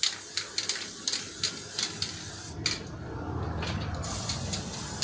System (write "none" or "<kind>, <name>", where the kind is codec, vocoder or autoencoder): none